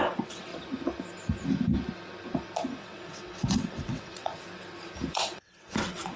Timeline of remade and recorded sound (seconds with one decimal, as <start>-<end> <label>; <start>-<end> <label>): 0.0-0.5 remade; 0.5-2.8 recorded; 2.8-4.3 remade; 4.3-5.1 recorded; 5.1-6.2 remade